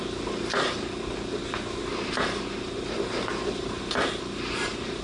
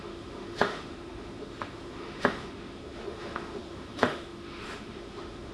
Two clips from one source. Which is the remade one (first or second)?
second